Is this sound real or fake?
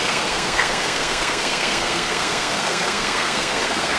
fake